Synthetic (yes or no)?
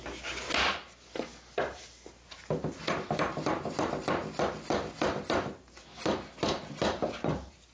no